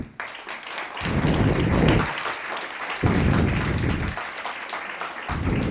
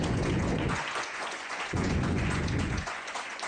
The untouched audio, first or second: first